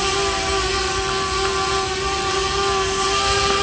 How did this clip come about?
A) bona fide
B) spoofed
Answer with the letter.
B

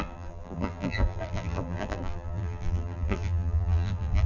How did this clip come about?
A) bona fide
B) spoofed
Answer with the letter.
B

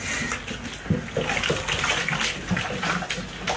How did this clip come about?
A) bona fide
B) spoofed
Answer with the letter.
A